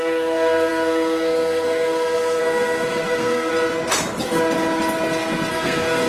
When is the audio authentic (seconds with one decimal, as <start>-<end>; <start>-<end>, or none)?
3.5-5.5